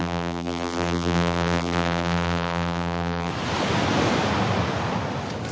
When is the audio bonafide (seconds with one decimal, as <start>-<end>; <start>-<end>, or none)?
3.3-5.5